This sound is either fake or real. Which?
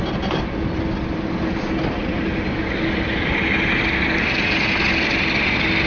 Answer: real